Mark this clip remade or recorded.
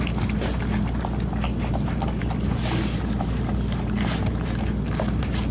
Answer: recorded